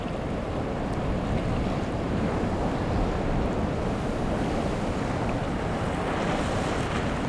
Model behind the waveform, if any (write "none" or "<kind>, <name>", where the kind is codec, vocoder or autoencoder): none